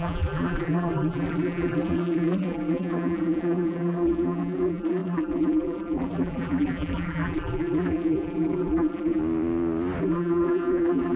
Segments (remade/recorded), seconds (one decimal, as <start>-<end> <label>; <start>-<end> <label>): 0.0-9.2 remade; 9.2-10.0 recorded; 10.0-11.2 remade